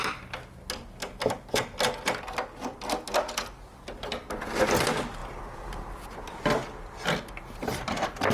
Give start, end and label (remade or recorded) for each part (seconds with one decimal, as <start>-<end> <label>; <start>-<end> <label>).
0.0-8.3 recorded